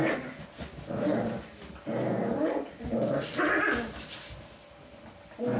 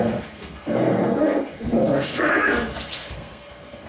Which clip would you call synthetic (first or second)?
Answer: second